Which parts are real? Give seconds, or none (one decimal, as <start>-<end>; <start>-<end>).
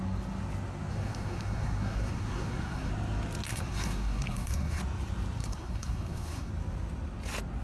0.0-0.9; 2.9-3.5; 4.8-5.4; 6.5-7.6